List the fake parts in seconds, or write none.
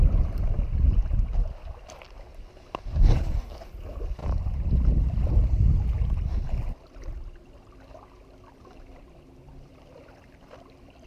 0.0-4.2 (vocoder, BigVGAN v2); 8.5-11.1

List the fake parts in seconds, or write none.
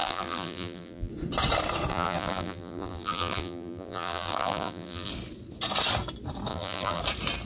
0.0-1.1 (vocoder, BigVGAN v2); 1.9-5.1; 6.5-7.0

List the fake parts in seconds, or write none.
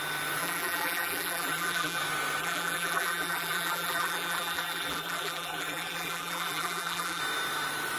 0.4-2.0 (vocoder, BigVGAN v2); 2.4-7.2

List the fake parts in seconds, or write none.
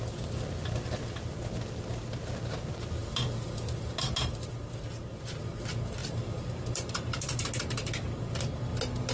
6.0-7.5 (vocoder, BigVGAN v2)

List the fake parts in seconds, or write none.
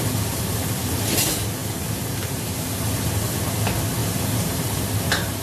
1.6-2.4 (vocoder, BigVGAN v2); 4.0-4.7